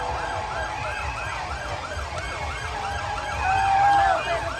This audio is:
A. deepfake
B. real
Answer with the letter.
B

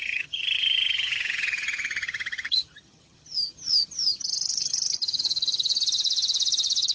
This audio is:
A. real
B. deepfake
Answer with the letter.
B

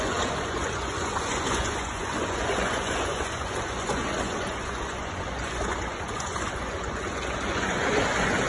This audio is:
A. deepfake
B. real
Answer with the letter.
A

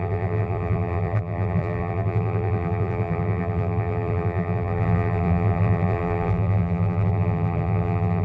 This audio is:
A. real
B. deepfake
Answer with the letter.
B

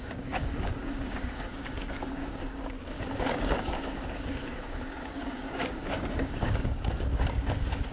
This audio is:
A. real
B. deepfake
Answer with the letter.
B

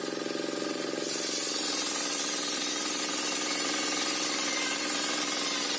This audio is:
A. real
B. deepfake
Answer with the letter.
B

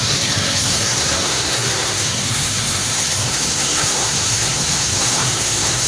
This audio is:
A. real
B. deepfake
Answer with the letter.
B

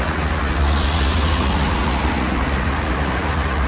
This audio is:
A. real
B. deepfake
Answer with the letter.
B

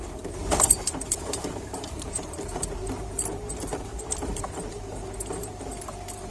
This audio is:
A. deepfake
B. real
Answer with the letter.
A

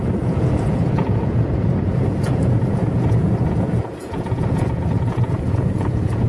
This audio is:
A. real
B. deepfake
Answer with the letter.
B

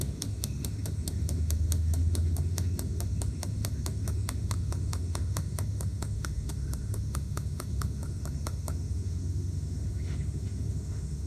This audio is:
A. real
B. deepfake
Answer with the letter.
B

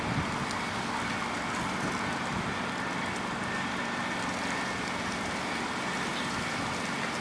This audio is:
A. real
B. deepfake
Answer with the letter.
A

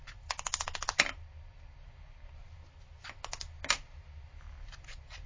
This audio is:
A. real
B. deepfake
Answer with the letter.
A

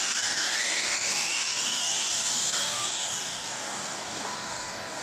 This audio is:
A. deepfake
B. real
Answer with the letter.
A